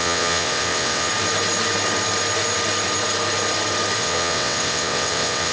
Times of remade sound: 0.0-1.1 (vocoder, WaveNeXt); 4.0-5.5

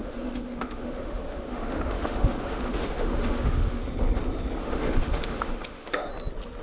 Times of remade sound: 0.0-3.8 (autoencoder, DAC-VAE); 4.6-6.1